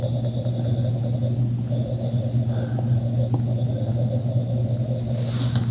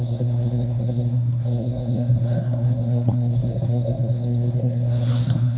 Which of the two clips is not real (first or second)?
second